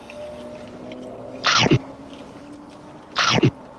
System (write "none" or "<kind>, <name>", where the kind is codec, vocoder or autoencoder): none